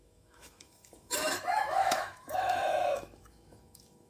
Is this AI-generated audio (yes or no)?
yes